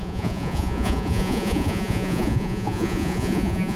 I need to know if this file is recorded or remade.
remade